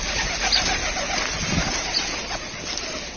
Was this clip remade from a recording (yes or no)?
no